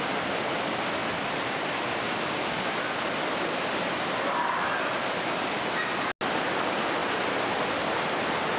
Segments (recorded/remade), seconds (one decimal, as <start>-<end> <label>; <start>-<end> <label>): 0.0-8.6 recorded